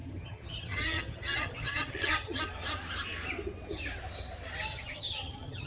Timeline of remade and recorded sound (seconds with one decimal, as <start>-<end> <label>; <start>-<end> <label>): 0.0-2.4 remade; 2.4-4.7 recorded; 4.7-5.7 remade